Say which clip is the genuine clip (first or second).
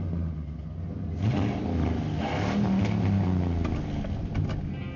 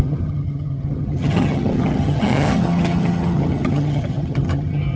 first